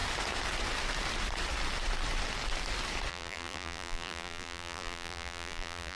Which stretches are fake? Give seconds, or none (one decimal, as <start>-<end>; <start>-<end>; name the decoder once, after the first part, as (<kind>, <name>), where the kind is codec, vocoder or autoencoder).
3.1-6.0 (vocoder, BigVGAN v2)